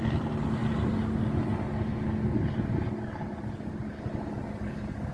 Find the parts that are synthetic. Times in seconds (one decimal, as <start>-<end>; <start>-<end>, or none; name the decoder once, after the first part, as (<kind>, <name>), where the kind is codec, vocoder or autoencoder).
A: none